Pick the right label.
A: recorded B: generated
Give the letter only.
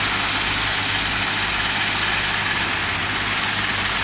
A